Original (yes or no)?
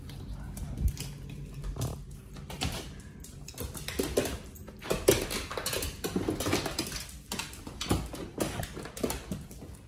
yes